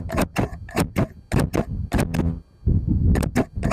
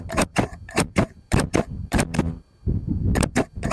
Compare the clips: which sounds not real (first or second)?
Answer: second